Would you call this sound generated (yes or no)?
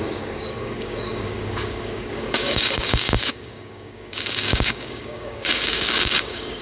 yes